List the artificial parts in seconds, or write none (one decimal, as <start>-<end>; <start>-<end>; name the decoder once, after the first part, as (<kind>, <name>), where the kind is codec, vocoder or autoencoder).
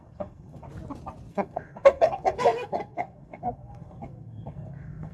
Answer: 0.0-0.7 (codec, SNAC); 1.3-5.1